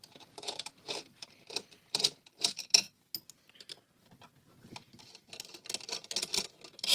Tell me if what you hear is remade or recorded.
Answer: recorded